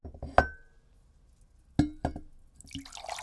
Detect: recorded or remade recorded